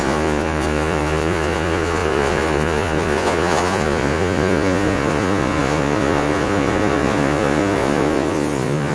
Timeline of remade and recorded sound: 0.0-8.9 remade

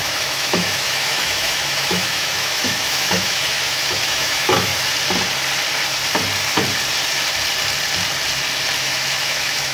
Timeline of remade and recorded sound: 0.0-4.7 remade; 4.7-8.8 recorded; 8.8-9.7 remade

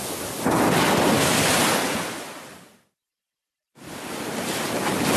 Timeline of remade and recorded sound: 0.0-3.1 recorded; 3.1-5.2 remade